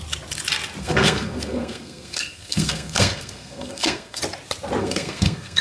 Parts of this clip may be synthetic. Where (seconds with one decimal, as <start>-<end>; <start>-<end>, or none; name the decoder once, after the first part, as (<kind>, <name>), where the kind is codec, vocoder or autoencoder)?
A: 0.8-4.2 (codec, SNAC); 4.8-5.6